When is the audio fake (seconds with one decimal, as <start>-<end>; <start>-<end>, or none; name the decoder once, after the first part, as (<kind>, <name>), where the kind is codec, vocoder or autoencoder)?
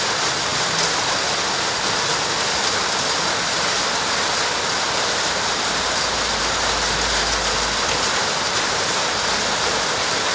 none